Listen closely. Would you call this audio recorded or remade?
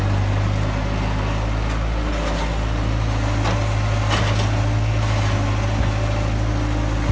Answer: recorded